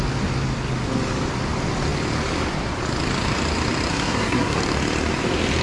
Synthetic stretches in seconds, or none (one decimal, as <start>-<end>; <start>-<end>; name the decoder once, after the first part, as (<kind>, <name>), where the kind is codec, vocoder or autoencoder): 3.9-4.6 (codec, SNAC)